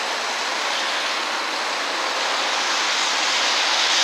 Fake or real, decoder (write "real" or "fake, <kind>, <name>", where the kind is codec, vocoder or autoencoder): real